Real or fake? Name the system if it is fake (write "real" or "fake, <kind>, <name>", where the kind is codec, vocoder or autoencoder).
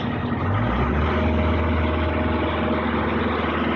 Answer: real